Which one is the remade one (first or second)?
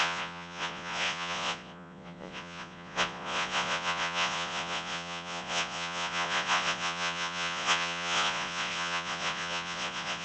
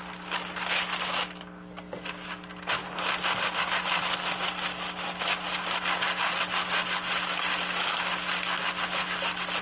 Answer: first